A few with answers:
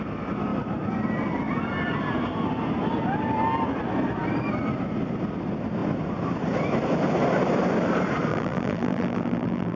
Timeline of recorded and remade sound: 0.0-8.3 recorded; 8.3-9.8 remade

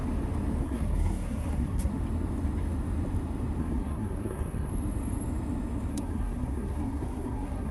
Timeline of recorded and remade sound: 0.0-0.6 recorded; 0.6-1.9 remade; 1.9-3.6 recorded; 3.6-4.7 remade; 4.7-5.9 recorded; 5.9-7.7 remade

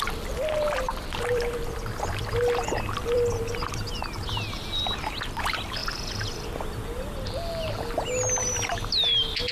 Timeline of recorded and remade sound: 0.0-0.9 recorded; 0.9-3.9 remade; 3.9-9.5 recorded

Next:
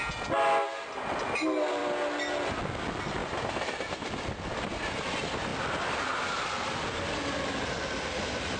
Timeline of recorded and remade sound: 0.0-8.6 recorded